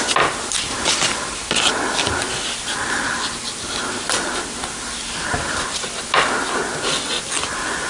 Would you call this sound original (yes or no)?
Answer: yes